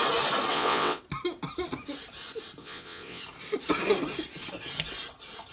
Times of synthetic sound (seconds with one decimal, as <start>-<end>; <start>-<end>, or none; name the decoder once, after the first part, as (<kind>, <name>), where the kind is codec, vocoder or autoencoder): 0.5-1.0 (vocoder, WaveNeXt); 2.6-3.2